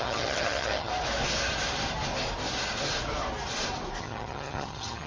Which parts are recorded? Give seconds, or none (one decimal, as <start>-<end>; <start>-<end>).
0.9-4.0

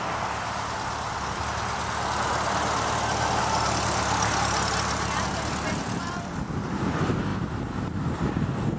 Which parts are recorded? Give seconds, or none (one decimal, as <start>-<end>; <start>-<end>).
0.0-8.8